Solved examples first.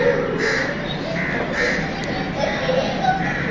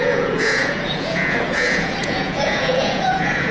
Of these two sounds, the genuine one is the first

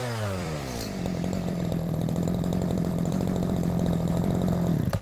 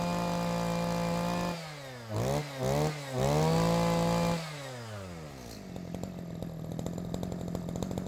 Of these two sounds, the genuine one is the second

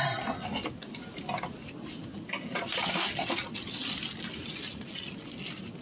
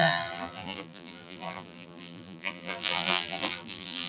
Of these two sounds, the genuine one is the first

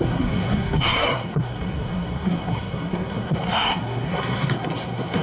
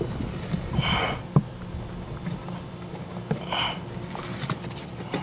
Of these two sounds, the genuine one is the second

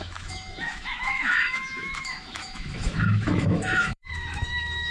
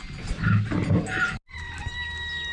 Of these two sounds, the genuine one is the second